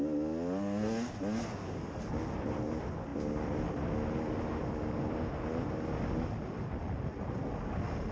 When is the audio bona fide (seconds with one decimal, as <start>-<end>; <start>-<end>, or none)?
0.0-8.1